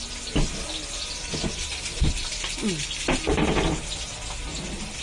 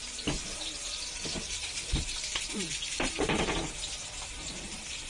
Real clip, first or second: first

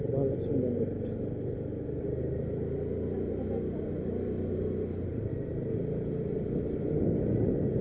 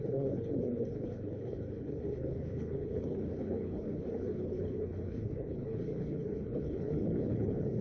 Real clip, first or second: first